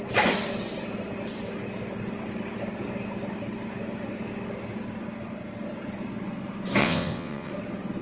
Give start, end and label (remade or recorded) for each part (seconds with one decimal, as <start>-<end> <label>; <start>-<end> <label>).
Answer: 0.0-6.8 recorded; 6.8-7.5 remade; 7.5-8.0 recorded